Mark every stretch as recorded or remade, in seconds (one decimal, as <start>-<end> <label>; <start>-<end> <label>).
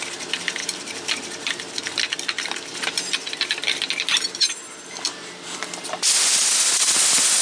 0.0-0.6 recorded; 0.6-1.7 remade; 1.7-2.7 recorded; 2.7-5.6 remade; 5.6-7.4 recorded